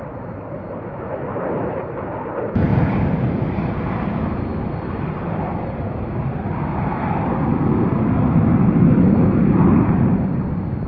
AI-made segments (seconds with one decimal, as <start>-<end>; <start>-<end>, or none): none